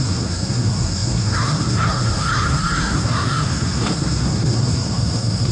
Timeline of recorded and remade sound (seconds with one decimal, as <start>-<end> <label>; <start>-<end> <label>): 0.0-5.5 remade